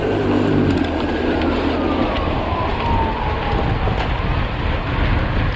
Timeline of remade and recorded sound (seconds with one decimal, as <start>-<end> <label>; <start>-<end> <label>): 0.0-2.7 remade; 2.7-5.6 recorded